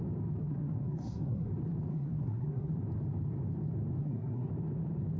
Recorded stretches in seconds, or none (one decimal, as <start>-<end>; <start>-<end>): 0.0-0.4; 1.5-1.9; 2.7-4.0; 4.5-5.2